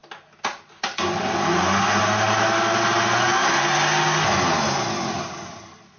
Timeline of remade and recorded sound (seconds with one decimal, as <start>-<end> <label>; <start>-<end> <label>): 0.0-6.0 recorded